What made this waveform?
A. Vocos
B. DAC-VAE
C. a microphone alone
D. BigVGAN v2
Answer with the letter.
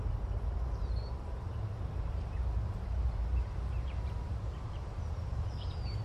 D